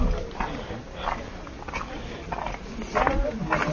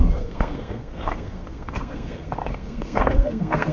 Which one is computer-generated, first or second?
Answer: second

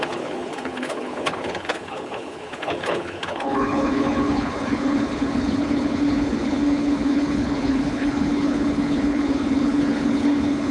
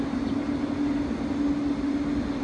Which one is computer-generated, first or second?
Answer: first